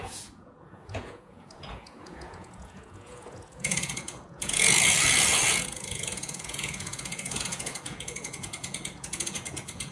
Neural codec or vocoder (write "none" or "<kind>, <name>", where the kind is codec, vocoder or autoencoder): vocoder, Vocos